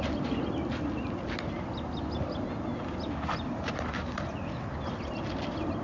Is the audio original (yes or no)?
yes